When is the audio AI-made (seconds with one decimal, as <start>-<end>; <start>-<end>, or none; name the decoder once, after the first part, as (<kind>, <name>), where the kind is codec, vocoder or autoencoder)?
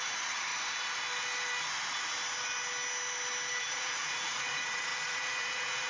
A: 0.0-0.5 (vocoder, Vocos); 3.6-5.9